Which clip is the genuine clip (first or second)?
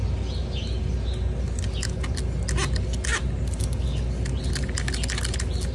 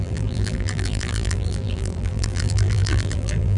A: first